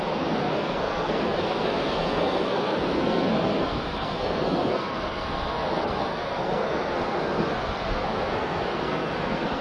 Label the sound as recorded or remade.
remade